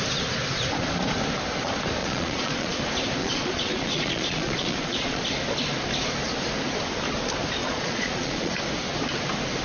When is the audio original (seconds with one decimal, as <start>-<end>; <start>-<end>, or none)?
0.0-2.0; 2.8-3.2; 5.2-7.6; 8.5-9.6